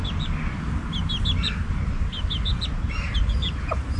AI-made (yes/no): no